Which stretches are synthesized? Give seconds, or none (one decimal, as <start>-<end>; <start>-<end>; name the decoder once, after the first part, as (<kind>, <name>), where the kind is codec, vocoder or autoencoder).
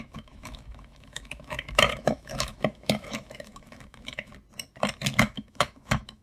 0.0-4.3 (autoencoder, DAC-VAE); 5.2-6.2